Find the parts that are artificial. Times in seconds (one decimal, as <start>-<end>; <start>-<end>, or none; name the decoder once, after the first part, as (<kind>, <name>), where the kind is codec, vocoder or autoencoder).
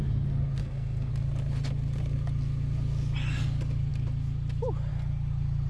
0.6-1.1 (codec, SNAC)